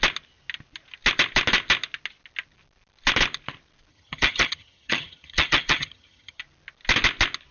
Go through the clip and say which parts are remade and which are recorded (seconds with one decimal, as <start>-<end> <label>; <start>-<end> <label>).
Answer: 0.0-3.9 recorded; 3.9-6.4 remade; 6.4-7.5 recorded